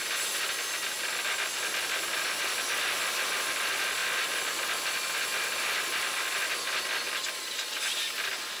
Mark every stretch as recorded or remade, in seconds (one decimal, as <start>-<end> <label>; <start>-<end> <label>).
0.0-8.6 recorded